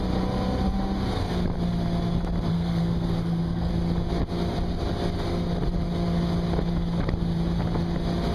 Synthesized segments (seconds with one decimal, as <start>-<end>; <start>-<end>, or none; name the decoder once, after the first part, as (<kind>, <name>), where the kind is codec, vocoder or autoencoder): 2.5-3.7 (codec, SNAC)